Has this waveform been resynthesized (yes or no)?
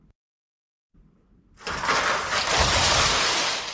no